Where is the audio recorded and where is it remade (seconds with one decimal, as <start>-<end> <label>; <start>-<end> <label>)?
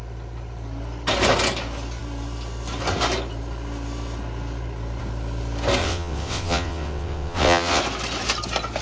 0.0-5.8 recorded; 5.8-7.8 remade; 7.8-8.8 recorded